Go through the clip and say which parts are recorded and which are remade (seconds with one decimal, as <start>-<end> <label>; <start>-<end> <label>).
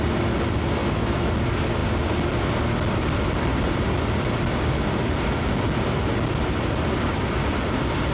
0.0-0.8 recorded; 0.8-1.3 remade; 1.3-8.1 recorded